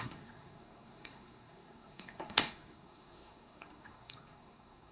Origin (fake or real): fake